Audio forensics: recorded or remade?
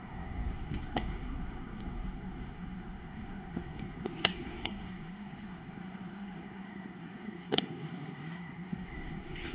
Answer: remade